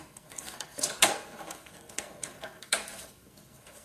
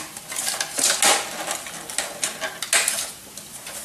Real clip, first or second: second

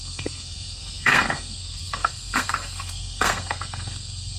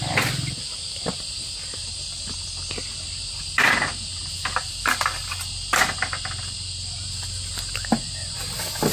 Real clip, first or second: second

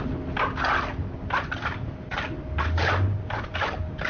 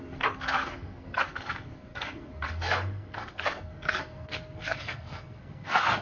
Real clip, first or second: first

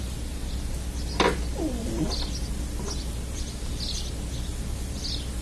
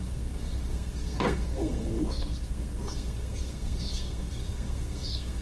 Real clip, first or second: first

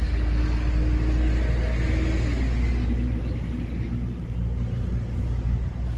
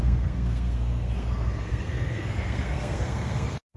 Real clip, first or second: first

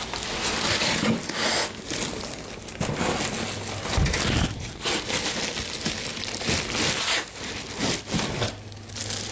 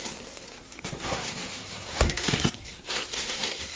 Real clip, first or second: first